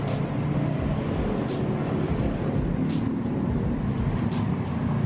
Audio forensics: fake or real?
real